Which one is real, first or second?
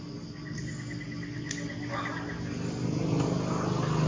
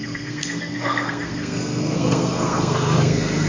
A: first